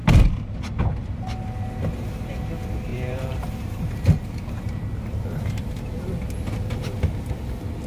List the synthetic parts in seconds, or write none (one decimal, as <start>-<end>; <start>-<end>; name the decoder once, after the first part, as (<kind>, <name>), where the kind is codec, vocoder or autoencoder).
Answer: 0.0-0.8 (vocoder, BigVGAN v2); 2.9-6.1